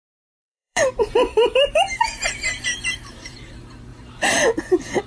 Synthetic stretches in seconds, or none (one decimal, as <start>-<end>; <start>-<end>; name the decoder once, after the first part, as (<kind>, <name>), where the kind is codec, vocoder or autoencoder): 0.4-3.5 (vocoder, BigVGAN v2); 3.9-4.6